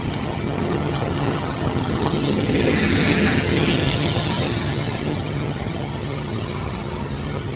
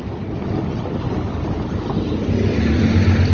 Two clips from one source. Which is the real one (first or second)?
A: second